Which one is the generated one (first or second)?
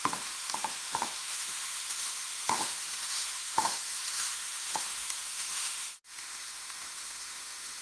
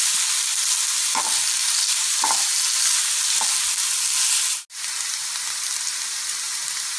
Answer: first